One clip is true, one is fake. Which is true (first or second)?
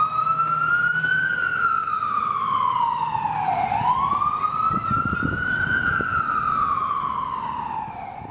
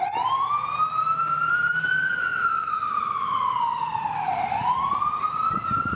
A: first